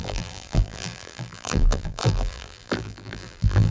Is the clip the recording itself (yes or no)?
no